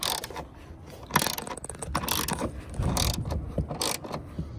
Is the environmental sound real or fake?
real